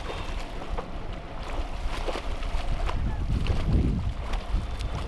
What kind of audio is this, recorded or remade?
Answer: recorded